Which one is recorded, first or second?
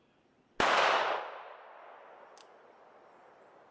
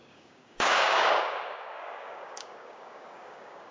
first